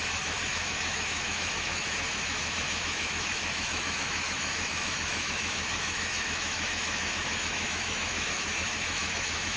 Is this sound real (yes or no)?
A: no